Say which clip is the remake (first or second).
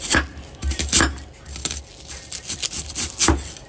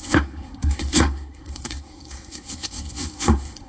second